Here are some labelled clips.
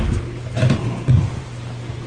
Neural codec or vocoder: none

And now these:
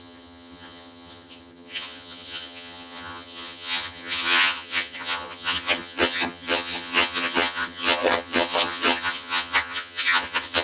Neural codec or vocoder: vocoder, HiFi-GAN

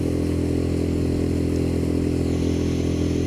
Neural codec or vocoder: none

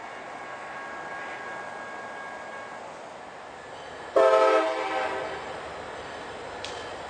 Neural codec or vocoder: none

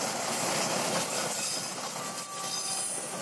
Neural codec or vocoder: none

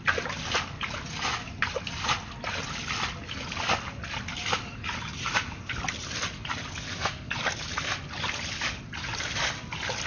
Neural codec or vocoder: none